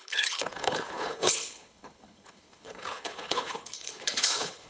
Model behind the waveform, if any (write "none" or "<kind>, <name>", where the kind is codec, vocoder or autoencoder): codec, HILCodec